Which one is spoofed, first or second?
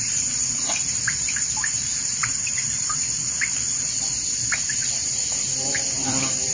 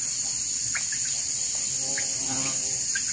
first